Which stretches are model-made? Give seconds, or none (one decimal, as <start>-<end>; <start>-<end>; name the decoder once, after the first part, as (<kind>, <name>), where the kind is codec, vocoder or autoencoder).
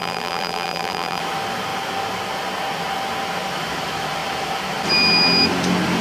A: 0.0-1.2 (vocoder, BigVGAN v2)